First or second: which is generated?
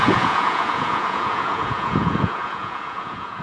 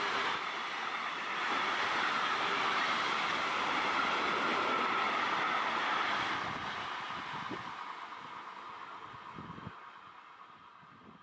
first